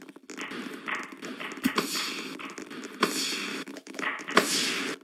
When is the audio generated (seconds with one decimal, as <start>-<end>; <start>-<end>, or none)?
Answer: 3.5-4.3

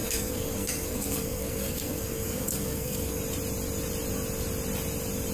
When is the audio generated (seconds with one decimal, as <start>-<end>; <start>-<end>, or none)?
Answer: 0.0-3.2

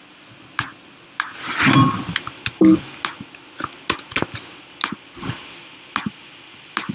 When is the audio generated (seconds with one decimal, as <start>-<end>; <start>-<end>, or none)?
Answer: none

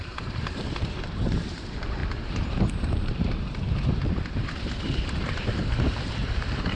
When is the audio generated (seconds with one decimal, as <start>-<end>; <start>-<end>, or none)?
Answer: 0.0-6.8

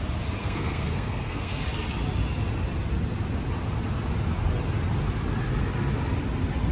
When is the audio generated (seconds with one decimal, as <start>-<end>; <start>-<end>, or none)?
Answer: 0.4-1.6

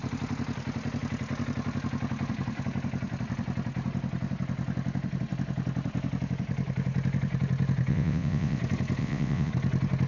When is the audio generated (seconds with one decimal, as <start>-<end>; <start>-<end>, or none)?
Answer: 7.9-8.6; 9.0-9.5